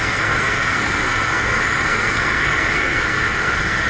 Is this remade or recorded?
remade